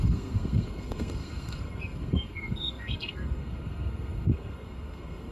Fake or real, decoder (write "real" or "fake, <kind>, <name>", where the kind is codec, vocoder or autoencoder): fake, codec, SNAC